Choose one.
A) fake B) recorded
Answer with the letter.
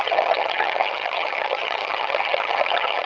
A